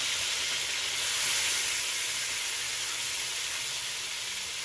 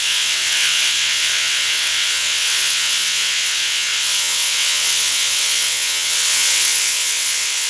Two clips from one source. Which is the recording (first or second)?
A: first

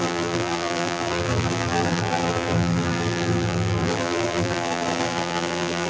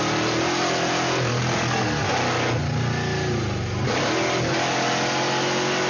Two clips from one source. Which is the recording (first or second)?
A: second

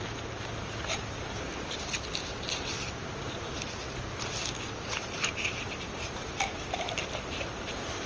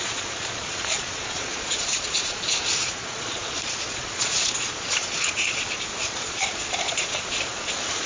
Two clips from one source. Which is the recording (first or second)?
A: first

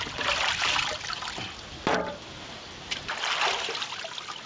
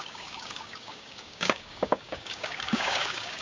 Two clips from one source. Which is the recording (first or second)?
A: first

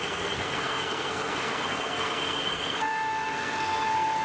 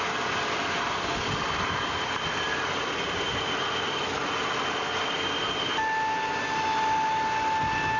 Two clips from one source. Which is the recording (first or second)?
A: second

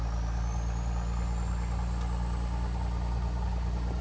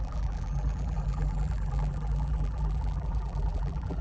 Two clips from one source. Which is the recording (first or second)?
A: first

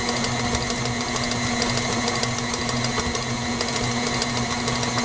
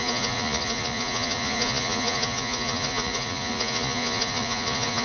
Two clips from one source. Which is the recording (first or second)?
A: first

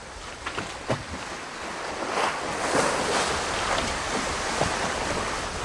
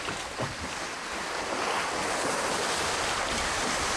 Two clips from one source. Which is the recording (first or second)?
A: first